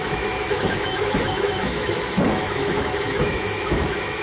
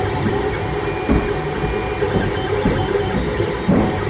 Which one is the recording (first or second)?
second